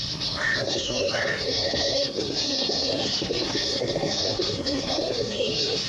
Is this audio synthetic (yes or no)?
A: yes